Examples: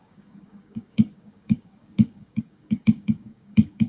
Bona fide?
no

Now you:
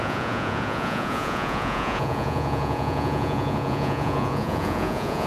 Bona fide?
no